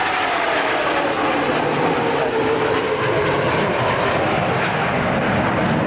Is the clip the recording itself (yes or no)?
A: yes